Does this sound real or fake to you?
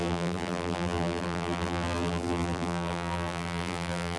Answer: fake